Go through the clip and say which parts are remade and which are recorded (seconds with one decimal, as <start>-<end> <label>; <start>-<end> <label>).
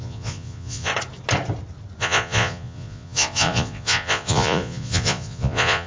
0.0-0.9 remade; 0.9-2.0 recorded; 2.0-5.9 remade